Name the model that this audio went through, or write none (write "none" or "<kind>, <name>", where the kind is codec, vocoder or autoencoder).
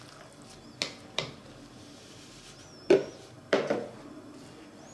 none